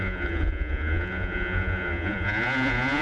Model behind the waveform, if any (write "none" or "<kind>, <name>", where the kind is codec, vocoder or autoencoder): vocoder, Vocos